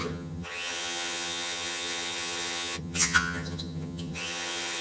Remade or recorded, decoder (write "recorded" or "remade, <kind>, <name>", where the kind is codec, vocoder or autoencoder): remade, vocoder, HiFi-GAN